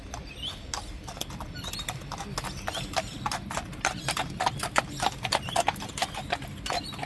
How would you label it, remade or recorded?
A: recorded